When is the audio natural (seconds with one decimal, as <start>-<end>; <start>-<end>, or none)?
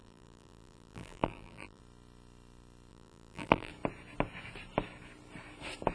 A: 1.8-2.9; 3.7-5.9